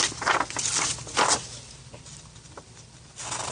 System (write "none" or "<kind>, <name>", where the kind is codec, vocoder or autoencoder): vocoder, BigVGAN v2